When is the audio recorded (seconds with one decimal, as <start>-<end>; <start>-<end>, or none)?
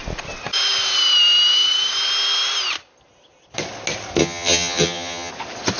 0.0-4.2; 5.3-5.8